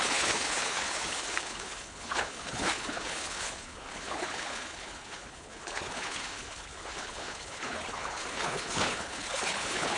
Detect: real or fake fake